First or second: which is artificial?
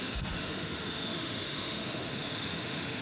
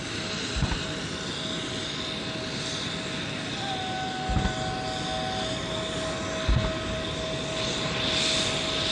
first